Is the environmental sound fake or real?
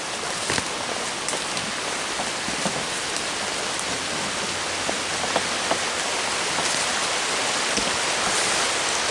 real